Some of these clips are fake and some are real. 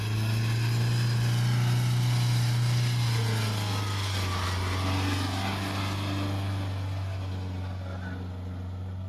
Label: real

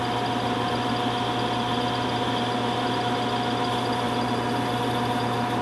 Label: real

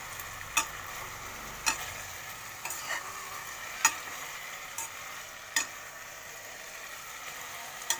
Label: real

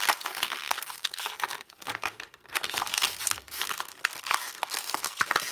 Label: fake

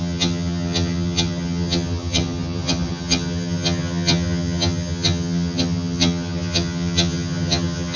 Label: fake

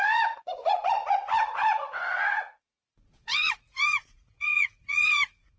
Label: fake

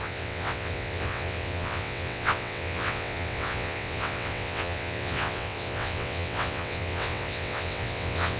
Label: fake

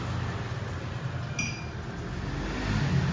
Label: real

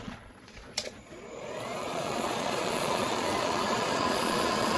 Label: fake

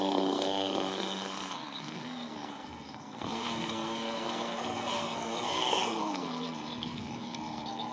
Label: fake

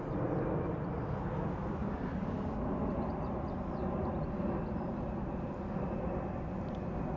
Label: real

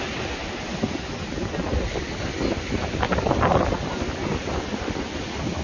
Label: real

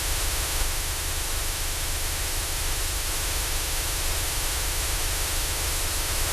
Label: fake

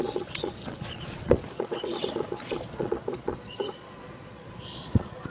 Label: fake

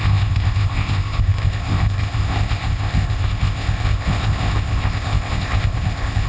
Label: fake